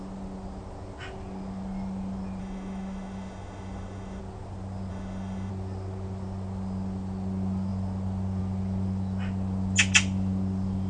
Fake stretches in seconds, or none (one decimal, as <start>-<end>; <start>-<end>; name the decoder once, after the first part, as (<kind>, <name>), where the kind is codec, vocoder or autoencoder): 2.4-4.2 (autoencoder, DAC-VAE); 4.9-5.5